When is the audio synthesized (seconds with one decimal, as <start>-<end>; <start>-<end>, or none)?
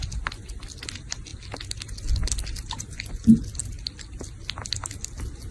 none